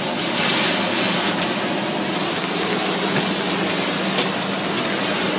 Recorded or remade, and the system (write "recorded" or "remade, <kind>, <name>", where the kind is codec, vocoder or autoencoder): recorded